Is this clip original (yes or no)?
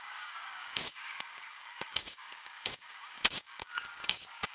no